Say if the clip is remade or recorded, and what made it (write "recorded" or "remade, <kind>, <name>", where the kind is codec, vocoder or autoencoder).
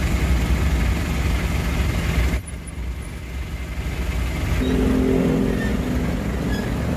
recorded